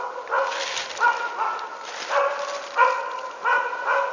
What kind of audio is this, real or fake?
fake